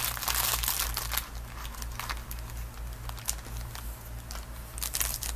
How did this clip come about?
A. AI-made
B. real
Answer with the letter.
B